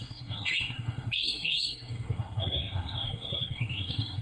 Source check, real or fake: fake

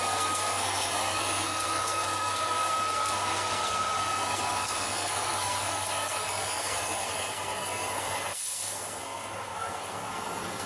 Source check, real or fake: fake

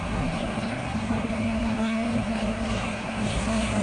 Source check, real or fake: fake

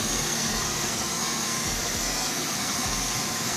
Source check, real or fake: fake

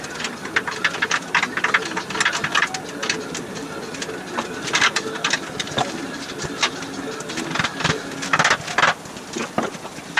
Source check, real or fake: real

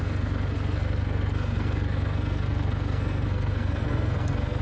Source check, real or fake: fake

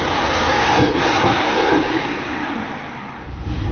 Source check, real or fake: fake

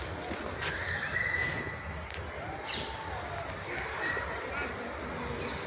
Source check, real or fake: real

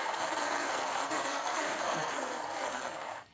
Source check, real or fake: fake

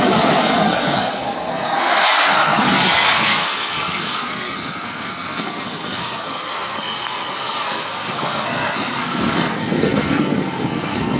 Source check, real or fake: fake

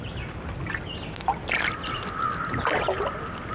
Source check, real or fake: real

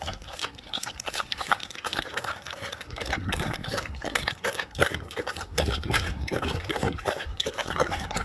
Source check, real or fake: fake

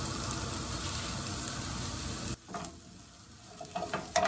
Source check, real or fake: real